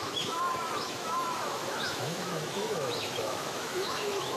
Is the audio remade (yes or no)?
yes